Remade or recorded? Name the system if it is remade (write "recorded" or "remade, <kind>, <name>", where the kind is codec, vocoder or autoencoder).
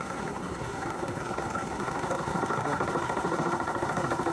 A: remade, codec, SNAC